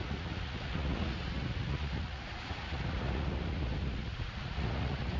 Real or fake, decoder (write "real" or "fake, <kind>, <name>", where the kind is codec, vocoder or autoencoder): fake, vocoder, Vocos